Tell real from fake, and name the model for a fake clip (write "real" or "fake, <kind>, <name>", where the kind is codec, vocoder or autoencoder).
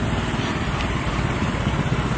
real